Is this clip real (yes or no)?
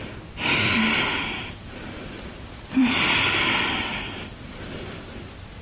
no